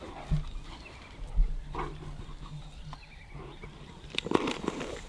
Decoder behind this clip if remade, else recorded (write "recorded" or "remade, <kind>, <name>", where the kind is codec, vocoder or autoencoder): recorded